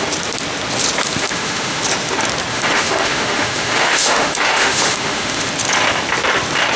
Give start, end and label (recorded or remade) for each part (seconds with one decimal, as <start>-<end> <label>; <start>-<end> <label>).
0.0-1.2 recorded; 1.2-1.8 remade; 1.8-2.5 recorded; 2.5-5.5 remade; 5.5-6.8 recorded

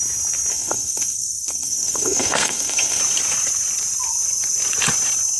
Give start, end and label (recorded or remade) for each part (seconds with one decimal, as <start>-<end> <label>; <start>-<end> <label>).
0.0-0.5 recorded; 0.5-3.0 remade; 3.0-5.4 recorded

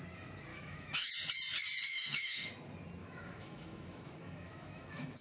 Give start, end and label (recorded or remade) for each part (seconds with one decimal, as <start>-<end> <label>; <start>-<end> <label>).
0.0-0.5 recorded; 0.5-1.1 remade; 1.1-1.9 recorded; 1.9-2.5 remade; 2.5-3.0 recorded; 3.0-5.2 remade

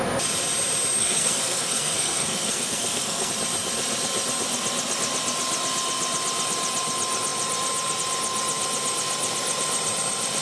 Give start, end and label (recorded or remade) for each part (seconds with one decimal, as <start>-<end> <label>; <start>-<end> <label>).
0.0-1.0 recorded; 1.0-3.3 remade; 3.3-10.4 recorded

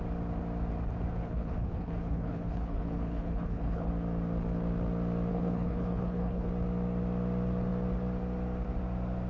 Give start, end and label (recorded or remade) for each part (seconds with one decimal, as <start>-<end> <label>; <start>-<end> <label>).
0.0-1.2 recorded; 1.2-3.9 remade; 3.9-5.3 recorded; 5.3-6.5 remade; 6.5-9.3 recorded

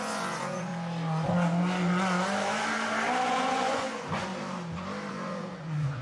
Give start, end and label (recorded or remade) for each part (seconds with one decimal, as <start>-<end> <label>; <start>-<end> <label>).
0.0-0.7 remade; 0.7-3.3 recorded; 3.3-4.3 remade; 4.3-5.1 recorded; 5.1-6.0 remade

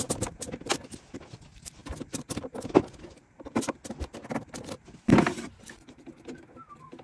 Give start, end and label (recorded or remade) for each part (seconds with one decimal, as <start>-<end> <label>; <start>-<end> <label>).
0.0-7.0 recorded

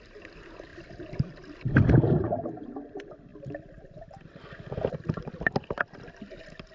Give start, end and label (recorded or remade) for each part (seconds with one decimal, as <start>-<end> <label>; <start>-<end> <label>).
0.0-6.7 recorded